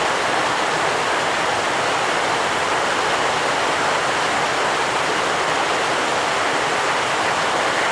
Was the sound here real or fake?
real